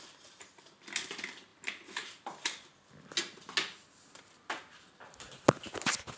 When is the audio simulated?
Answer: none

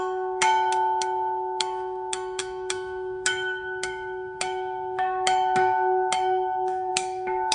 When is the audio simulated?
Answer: 0.0-7.5 (autoencoder, DAC-VAE)

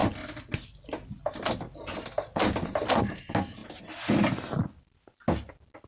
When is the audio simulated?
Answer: none

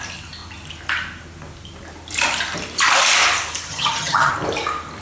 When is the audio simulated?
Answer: 3.7-4.3 (vocoder, HiFi-GAN)

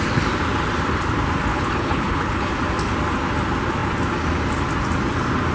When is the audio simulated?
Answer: 1.5-2.5 (codec, HILCodec)

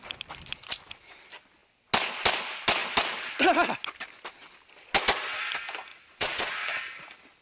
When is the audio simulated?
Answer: 5.9-6.5 (vocoder, Vocos)